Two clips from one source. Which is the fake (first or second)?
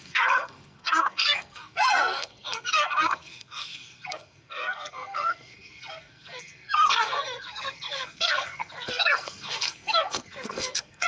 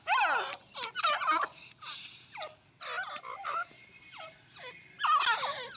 first